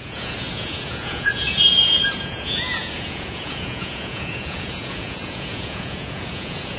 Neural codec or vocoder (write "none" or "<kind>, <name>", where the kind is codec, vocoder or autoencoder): vocoder, Vocos